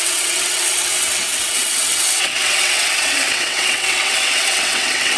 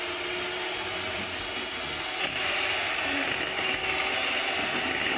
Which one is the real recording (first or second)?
second